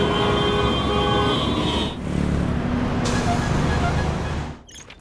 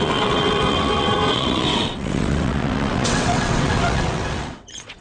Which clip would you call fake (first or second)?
second